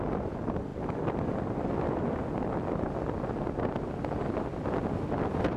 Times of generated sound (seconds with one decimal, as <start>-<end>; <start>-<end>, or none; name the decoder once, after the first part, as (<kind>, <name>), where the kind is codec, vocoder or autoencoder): none

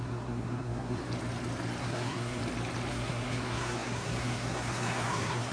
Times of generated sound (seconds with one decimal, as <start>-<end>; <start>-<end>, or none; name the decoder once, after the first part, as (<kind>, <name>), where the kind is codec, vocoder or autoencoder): 0.0-1.0 (codec, SNAC); 1.8-2.4; 2.9-5.5

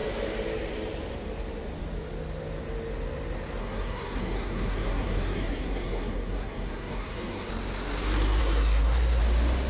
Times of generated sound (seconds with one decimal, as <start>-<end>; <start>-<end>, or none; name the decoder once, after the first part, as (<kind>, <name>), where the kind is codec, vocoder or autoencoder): 3.6-7.5 (codec, SNAC); 8.4-9.2

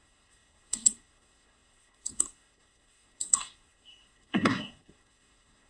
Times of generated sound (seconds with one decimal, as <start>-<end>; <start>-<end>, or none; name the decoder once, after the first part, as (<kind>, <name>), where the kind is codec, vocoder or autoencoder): 0.0-5.7 (codec, SNAC)